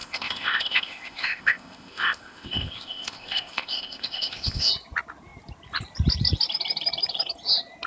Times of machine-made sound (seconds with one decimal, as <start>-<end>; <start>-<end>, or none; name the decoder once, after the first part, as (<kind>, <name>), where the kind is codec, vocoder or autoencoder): 0.0-4.7 (codec, ZipCodec)